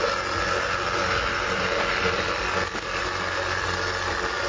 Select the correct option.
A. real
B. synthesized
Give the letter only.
A